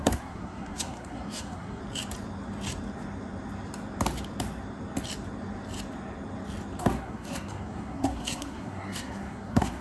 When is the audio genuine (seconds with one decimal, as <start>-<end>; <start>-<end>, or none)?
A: 1.8-6.8